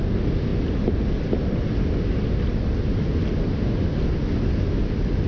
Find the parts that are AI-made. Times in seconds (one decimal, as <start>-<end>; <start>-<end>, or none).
none